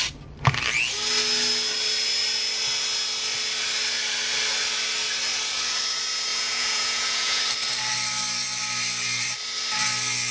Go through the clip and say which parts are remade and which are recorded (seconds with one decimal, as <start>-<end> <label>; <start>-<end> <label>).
0.0-6.3 recorded; 6.3-7.4 remade; 7.4-10.3 recorded